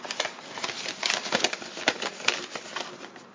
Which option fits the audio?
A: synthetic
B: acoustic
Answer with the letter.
B